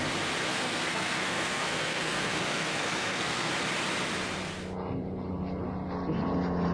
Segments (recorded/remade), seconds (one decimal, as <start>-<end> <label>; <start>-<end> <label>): 0.0-0.5 recorded; 0.5-3.5 remade; 3.5-6.7 recorded